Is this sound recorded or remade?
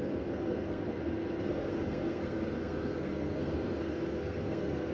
remade